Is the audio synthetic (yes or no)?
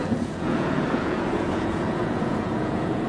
yes